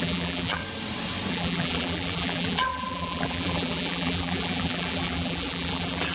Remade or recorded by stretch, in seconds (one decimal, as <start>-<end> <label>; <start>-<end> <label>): 0.0-0.6 remade; 0.6-1.3 recorded; 1.3-6.1 remade